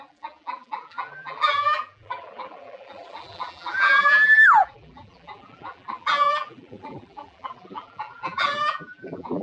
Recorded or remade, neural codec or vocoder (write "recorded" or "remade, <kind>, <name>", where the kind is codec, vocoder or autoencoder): remade, vocoder, BigVGAN v2